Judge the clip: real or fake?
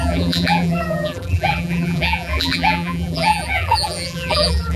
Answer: fake